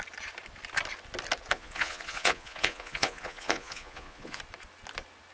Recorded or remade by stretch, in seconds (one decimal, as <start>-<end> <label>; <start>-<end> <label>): 0.0-1.5 recorded; 1.5-4.4 remade; 4.4-5.3 recorded